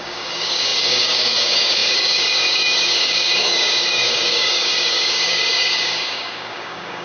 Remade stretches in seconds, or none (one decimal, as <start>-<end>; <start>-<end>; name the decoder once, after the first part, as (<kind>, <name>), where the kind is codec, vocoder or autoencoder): 0.0-7.0 (codec, DAC)

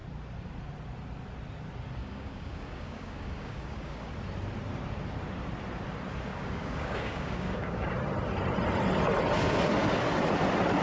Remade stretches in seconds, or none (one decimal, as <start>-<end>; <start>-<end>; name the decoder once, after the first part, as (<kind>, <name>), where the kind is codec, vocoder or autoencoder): 2.0-4.1 (codec, DAC); 6.3-7.9